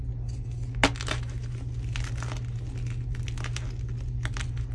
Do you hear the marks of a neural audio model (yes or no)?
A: no